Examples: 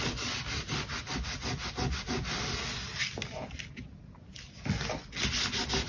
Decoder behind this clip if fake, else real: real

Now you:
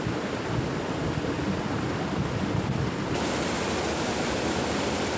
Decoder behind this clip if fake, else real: real